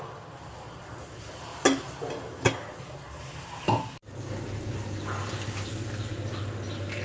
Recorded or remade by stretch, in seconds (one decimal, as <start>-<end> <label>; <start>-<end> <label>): 0.0-7.0 recorded